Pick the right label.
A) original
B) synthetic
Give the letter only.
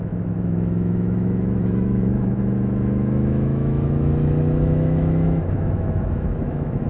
B